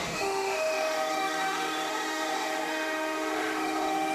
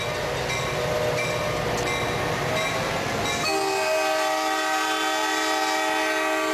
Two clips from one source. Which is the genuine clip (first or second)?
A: second